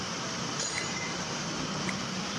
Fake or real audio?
fake